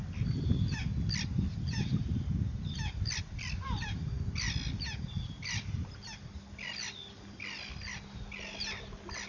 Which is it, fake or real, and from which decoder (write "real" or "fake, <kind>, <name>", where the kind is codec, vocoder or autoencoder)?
real